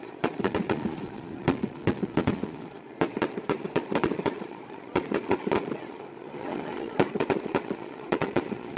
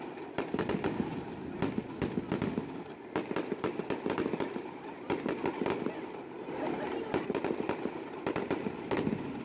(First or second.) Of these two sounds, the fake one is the first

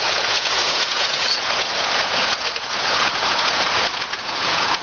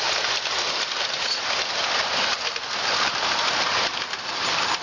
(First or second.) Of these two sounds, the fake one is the first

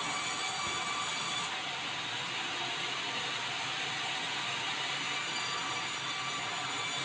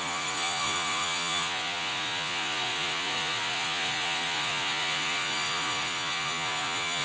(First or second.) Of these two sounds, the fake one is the second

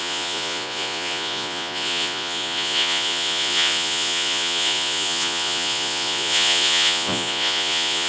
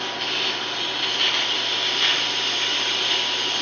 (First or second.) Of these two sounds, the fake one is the first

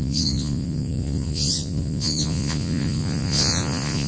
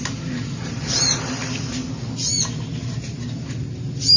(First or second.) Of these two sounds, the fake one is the first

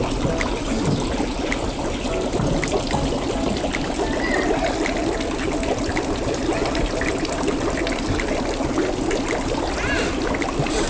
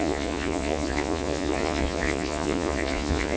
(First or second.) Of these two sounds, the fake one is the second